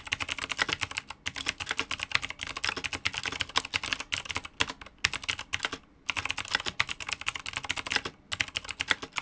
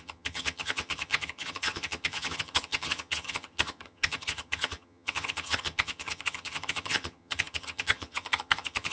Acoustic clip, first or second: first